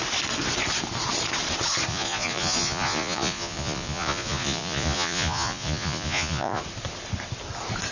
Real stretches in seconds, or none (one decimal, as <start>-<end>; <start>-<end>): 0.0-1.9; 6.6-7.9